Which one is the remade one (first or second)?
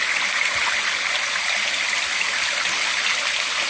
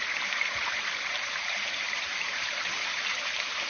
second